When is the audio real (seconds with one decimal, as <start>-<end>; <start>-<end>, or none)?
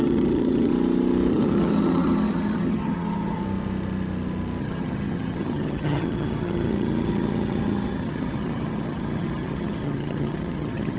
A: 0.7-1.3; 3.4-4.6